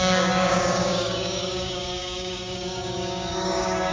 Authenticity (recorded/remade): remade